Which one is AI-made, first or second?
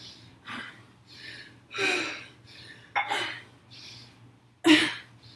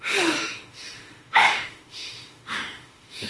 second